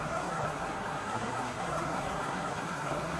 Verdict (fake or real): fake